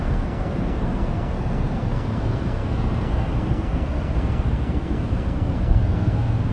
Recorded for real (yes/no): no